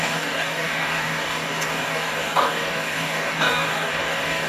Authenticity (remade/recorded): remade